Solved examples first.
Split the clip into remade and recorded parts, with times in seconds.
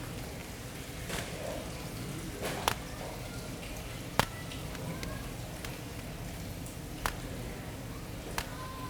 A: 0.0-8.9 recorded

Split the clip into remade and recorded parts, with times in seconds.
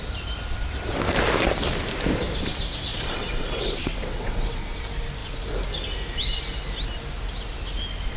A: 0.0-2.9 recorded; 2.9-4.8 remade; 4.8-8.2 recorded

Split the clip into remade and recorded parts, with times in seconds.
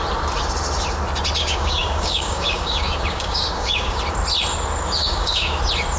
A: 0.0-1.4 recorded; 1.4-4.0 remade; 4.0-5.0 recorded; 5.0-5.6 remade; 5.6-6.0 recorded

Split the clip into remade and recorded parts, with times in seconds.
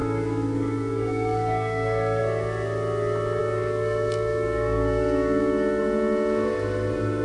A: 0.0-2.2 remade; 2.2-3.4 recorded; 3.4-5.8 remade; 5.8-7.2 recorded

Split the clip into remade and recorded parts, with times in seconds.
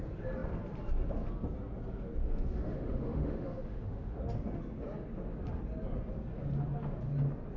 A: 0.0-2.2 recorded; 2.2-4.2 remade; 4.2-7.6 recorded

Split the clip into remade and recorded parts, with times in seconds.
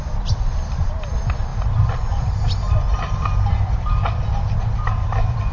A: 0.0-5.5 remade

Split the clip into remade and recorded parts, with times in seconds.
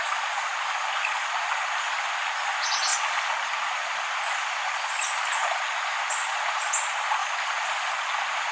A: 0.0-8.5 recorded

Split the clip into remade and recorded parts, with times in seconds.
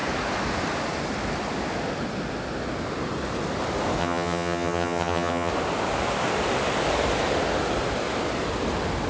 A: 0.0-4.0 recorded; 4.0-5.5 remade; 5.5-9.1 recorded